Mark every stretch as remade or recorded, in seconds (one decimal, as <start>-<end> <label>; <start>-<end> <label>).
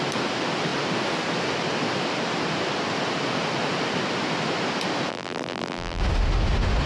0.0-5.1 recorded; 5.1-6.0 remade; 6.0-6.9 recorded